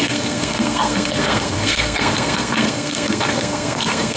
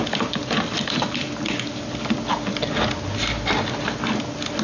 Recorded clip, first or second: second